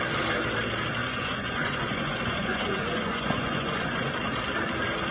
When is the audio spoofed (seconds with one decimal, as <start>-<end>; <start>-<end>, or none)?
1.0-4.1